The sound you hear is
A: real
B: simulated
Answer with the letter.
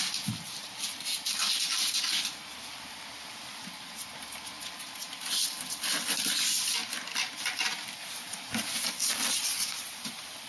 A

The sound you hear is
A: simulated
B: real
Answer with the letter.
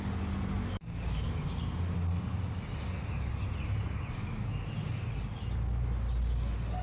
B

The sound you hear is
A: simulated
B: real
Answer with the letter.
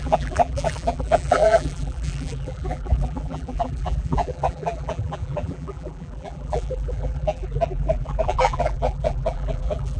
A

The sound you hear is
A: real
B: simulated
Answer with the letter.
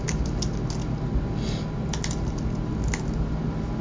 A